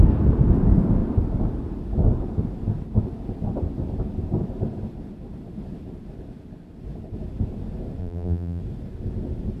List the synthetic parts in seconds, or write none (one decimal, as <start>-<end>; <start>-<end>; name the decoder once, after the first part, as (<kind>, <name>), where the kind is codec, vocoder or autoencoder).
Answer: 8.0-8.6 (vocoder, BigVGAN v2)